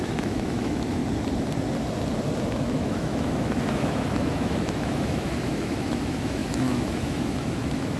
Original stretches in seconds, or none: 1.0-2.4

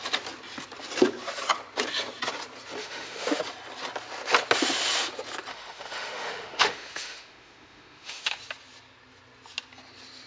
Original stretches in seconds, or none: 0.0-2.8; 3.4-5.5; 8.4-10.3

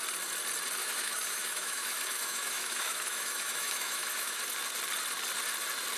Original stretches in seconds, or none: 0.0-0.8; 4.4-6.0

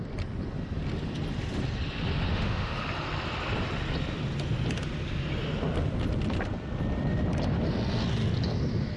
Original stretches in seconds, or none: 0.0-2.3; 2.8-9.0

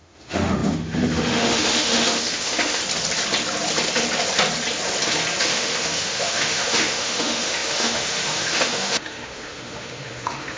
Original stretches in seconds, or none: 2.8-5.4

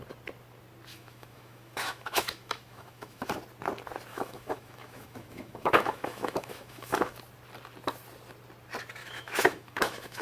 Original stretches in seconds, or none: 0.0-0.9; 3.3-4.1; 7.2-9.0

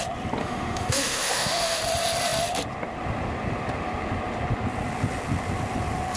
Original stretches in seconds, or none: 0.0-0.4; 1.8-6.2

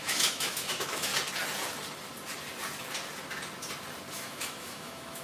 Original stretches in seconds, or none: 1.1-4.1